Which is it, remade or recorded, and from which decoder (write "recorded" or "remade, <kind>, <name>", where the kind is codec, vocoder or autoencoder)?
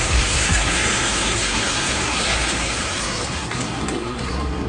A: remade, codec, SNAC